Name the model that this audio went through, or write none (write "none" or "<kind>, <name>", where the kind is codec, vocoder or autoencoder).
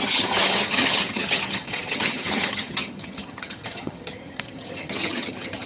vocoder, HiFi-GAN